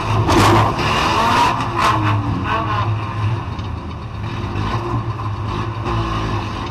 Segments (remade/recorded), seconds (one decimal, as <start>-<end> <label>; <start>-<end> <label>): 0.0-6.7 recorded